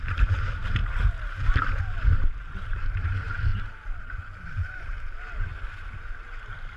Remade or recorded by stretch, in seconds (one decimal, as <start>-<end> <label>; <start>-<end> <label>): 0.0-0.8 remade; 0.8-1.8 recorded; 1.8-3.5 remade; 3.5-4.1 recorded; 4.1-5.5 remade; 5.5-6.8 recorded